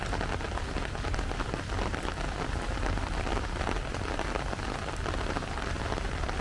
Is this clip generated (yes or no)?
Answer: no